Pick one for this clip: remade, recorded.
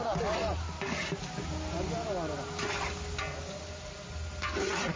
recorded